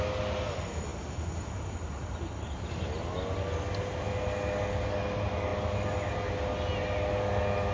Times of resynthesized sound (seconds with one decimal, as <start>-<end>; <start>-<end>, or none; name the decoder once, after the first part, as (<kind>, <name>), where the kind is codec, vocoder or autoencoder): none